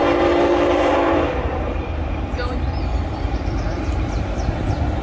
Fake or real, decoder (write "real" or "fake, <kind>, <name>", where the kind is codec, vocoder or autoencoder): fake, vocoder, BigVGAN v2